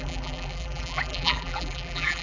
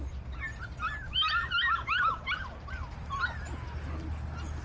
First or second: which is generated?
first